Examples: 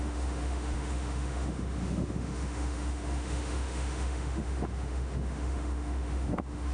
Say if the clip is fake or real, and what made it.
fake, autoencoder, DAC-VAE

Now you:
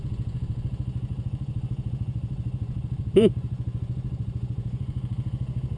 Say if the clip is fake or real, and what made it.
fake, vocoder, Vocos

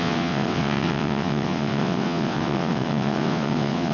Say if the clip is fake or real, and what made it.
fake, vocoder, WaveNeXt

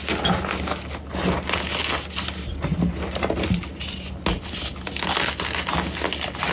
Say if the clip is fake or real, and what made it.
real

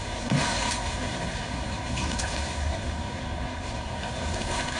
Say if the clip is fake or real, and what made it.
fake, codec, SNAC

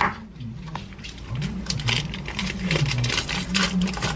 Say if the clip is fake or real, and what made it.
real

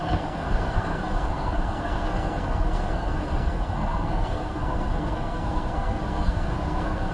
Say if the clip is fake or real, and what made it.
fake, codec, SNAC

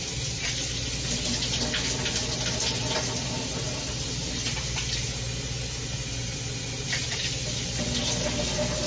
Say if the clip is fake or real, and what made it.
real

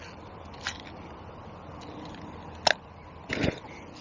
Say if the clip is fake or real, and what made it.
real